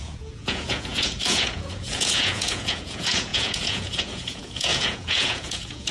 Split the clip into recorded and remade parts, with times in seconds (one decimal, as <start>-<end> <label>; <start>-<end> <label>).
0.0-5.9 remade